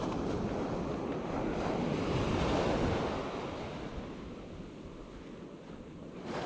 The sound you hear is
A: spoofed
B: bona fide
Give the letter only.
B